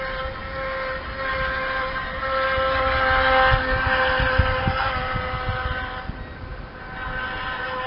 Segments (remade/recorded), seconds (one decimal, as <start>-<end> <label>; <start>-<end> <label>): 0.0-7.9 recorded